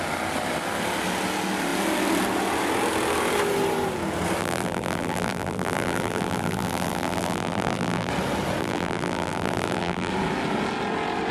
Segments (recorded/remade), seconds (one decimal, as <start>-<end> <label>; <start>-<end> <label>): 0.0-4.4 recorded; 4.4-8.1 remade; 8.1-8.6 recorded; 8.6-10.1 remade; 10.1-11.3 recorded